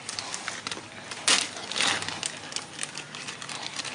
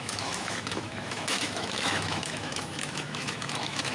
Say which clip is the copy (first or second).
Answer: second